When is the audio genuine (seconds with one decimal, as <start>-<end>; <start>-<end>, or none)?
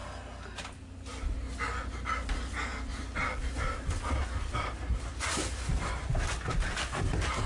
0.0-7.5